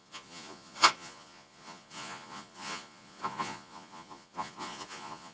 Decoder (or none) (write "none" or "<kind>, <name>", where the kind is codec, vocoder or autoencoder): vocoder, Vocos